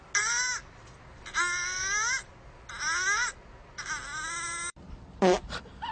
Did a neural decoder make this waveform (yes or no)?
no